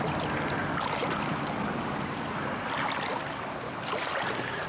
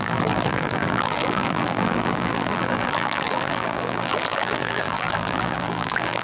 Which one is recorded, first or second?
first